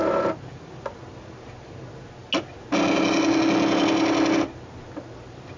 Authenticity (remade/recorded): recorded